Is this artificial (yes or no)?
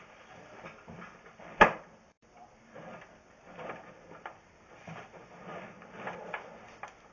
yes